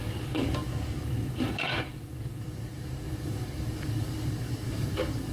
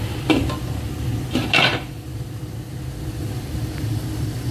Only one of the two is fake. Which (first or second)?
first